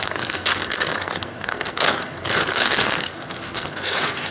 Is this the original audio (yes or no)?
no